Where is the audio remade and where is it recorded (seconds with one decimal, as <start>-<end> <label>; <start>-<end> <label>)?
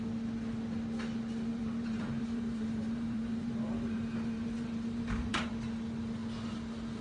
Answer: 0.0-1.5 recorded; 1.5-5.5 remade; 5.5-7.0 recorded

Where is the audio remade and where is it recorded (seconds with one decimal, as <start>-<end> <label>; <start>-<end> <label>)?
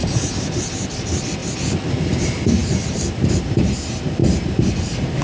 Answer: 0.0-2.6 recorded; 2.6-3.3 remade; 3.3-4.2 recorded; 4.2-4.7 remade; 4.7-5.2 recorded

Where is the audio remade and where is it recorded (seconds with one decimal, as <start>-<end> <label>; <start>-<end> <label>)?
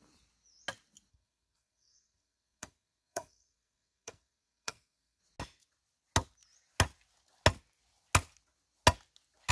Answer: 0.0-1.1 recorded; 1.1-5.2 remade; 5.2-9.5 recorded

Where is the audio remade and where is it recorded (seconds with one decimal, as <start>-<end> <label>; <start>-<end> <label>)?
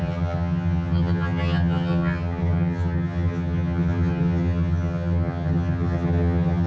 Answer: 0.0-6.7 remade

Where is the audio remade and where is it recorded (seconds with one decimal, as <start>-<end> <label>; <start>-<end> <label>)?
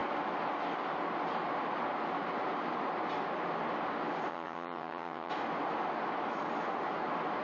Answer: 0.0-4.3 recorded; 4.3-5.3 remade; 5.3-7.4 recorded